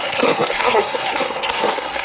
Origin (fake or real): fake